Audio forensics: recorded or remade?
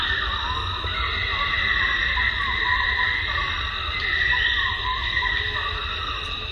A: recorded